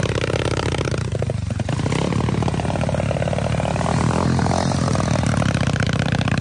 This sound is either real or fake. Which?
fake